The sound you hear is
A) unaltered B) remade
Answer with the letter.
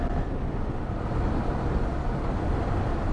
A